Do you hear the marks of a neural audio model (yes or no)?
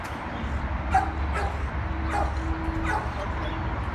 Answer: no